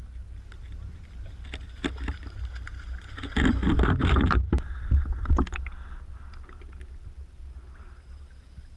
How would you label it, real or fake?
real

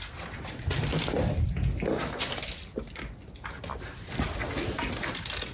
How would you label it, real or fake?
real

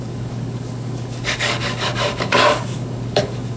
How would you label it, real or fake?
fake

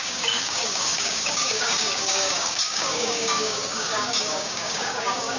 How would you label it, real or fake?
fake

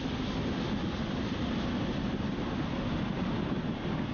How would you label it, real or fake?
real